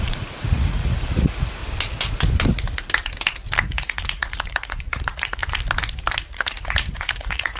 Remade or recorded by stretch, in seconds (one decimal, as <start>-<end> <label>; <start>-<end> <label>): 0.0-1.6 remade; 1.6-3.6 recorded; 3.6-5.4 remade; 5.4-6.3 recorded; 6.3-7.6 remade